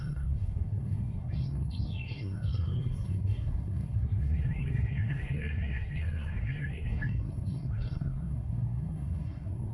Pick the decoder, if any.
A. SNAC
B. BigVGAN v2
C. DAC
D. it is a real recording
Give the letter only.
A